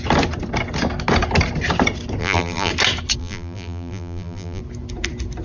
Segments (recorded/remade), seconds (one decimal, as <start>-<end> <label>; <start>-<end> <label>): 0.0-2.2 recorded; 2.2-2.7 remade; 2.7-3.2 recorded; 3.2-4.6 remade; 4.6-5.4 recorded